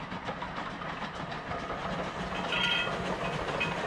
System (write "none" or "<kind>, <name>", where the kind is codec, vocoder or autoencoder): none